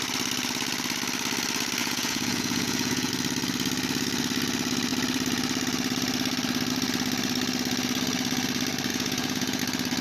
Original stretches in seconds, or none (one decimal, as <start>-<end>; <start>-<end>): 0.0-1.8; 3.1-8.9; 9.6-10.0